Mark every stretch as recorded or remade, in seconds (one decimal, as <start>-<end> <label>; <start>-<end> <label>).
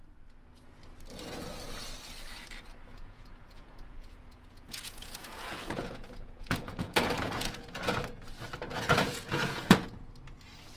0.0-2.9 recorded; 2.9-8.0 remade; 8.0-8.7 recorded; 8.7-10.1 remade; 10.1-10.8 recorded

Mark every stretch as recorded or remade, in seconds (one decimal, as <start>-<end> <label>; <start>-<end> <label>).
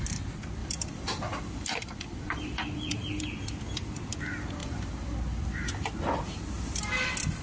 0.0-0.6 recorded; 0.6-3.2 remade; 3.2-4.6 recorded; 4.6-5.9 remade; 5.9-7.4 recorded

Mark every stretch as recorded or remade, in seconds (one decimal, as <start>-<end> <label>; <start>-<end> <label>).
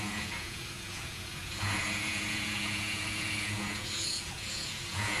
0.0-5.2 remade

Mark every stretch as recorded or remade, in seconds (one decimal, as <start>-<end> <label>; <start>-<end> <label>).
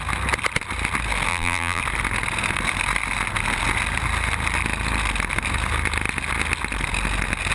0.0-1.3 recorded; 1.3-1.8 remade; 1.8-7.5 recorded